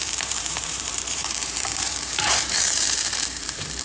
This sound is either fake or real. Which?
fake